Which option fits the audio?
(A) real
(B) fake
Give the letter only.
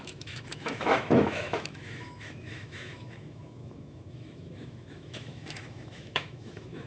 B